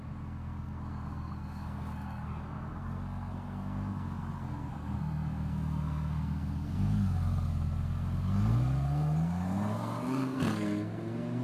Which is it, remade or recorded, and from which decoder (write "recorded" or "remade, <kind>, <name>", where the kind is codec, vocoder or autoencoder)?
remade, codec, SNAC